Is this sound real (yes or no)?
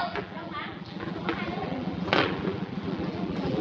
no